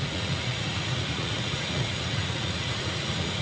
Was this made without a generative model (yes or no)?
no